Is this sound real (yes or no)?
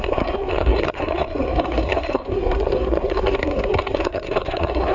no